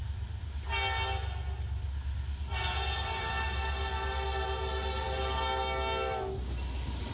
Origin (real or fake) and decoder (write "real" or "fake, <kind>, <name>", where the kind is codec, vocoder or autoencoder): real